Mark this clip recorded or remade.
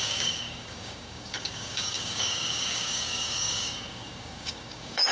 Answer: remade